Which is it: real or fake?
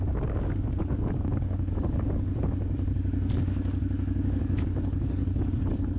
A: fake